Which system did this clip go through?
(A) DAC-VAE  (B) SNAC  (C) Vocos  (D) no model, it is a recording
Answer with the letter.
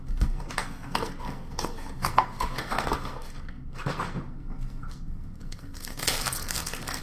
B